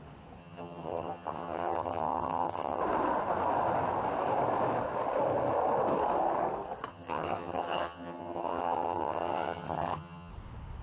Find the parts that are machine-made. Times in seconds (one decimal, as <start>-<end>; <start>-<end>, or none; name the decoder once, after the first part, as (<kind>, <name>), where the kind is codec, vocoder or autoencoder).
0.4-2.8 (vocoder, HiFi-GAN); 6.9-10.3